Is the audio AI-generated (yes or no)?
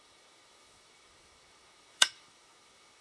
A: yes